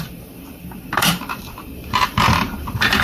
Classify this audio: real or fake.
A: fake